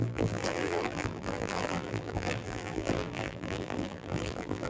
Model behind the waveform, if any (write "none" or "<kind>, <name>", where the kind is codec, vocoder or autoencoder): vocoder, BigVGAN v2